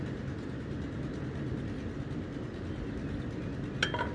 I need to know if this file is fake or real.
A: real